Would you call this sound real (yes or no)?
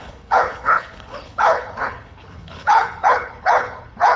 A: no